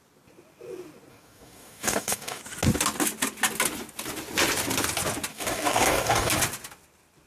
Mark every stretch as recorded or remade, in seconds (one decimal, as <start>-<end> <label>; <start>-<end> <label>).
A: 0.0-1.1 recorded; 1.1-2.4 remade; 2.4-5.3 recorded; 5.3-6.3 remade; 6.3-7.3 recorded